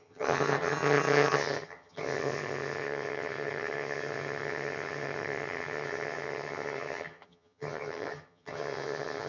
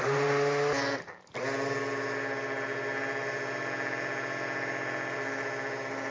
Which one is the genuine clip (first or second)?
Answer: second